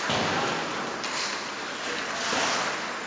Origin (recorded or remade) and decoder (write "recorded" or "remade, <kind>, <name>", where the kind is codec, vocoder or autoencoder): recorded